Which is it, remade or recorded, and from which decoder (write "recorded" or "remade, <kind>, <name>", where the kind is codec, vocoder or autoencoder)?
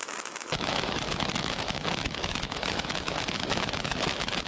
remade, autoencoder, DAC-VAE